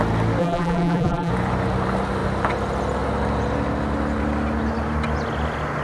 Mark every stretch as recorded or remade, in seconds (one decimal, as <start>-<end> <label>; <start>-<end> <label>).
0.0-0.4 recorded; 0.4-1.3 remade; 1.3-5.8 recorded